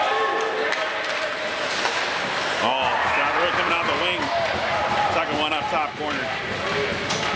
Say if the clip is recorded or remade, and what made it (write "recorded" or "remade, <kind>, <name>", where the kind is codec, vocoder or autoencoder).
recorded